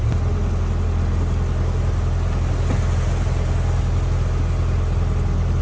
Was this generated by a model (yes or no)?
no